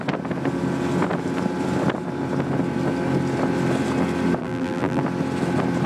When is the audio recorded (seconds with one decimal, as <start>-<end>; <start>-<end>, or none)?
0.0-4.4; 5.0-5.9